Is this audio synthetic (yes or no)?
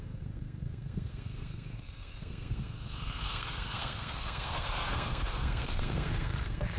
yes